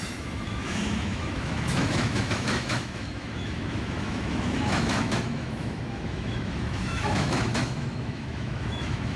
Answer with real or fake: fake